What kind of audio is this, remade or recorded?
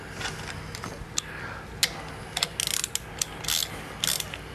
recorded